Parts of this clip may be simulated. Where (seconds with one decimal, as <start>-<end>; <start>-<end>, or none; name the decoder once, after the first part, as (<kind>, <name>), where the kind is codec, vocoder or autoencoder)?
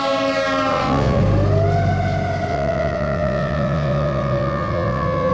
0.7-1.2 (vocoder, WaveNeXt); 2.5-5.3